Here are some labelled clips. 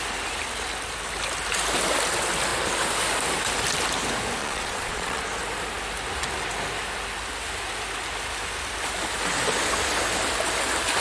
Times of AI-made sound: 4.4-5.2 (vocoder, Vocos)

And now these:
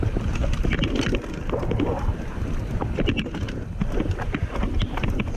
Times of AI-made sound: none